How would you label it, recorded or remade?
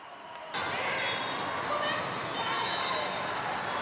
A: recorded